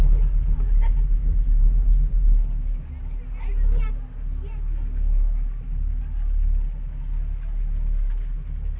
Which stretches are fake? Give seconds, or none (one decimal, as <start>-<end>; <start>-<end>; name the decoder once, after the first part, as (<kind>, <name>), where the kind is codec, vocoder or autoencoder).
none